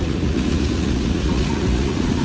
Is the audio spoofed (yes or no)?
yes